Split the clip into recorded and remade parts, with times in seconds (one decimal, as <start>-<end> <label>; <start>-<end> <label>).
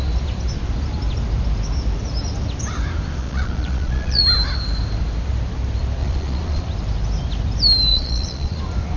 0.0-3.2 recorded; 3.2-4.2 remade; 4.2-6.0 recorded; 6.0-6.6 remade; 6.6-7.9 recorded; 7.9-8.6 remade; 8.6-9.0 recorded